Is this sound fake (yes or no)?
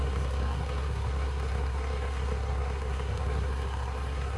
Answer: yes